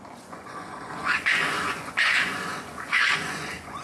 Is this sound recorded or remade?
remade